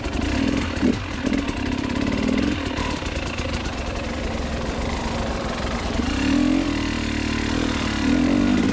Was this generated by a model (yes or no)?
yes